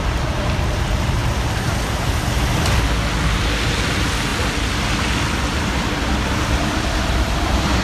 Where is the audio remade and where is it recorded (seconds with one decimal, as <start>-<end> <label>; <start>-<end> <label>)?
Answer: 0.0-1.2 remade; 1.2-3.9 recorded; 3.9-4.3 remade; 4.3-6.0 recorded; 6.0-7.8 remade